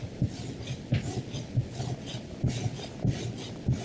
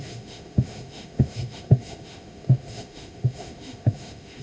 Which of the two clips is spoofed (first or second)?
second